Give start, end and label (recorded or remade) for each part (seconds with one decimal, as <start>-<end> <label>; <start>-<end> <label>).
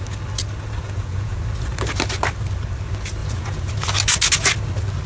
0.0-0.8 recorded; 0.8-1.4 remade; 1.4-3.2 recorded; 3.2-3.7 remade; 3.7-5.1 recorded